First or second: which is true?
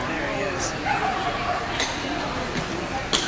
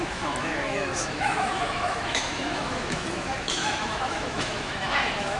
first